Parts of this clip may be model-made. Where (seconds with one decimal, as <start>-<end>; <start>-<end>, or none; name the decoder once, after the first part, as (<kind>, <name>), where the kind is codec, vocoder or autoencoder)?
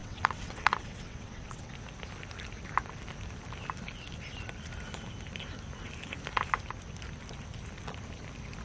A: 0.0-1.7 (vocoder, WaveNeXt)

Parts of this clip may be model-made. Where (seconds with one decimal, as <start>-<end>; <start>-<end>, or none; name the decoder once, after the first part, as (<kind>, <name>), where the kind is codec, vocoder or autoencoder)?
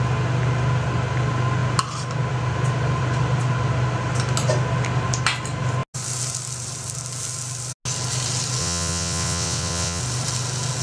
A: 8.6-10.0 (vocoder, WaveNeXt)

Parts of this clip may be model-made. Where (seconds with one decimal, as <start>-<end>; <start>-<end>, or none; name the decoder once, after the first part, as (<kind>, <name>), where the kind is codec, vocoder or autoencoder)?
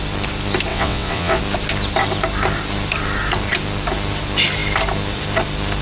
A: 0.7-1.4 (vocoder, WaveNeXt)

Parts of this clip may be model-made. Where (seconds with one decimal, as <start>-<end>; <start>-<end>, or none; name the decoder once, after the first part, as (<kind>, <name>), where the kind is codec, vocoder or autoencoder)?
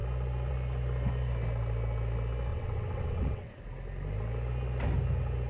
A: 2.5-3.6 (vocoder, WaveNeXt)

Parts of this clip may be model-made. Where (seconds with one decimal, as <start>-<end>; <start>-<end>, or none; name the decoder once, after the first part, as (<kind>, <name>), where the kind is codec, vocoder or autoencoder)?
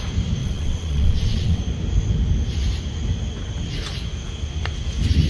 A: 0.4-1.6 (vocoder, WaveNeXt)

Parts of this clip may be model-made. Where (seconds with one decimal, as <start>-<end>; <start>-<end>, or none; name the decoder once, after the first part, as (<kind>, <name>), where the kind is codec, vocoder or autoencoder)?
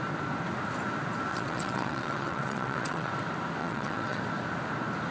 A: 1.3-3.1 (vocoder, WaveNeXt); 3.6-4.2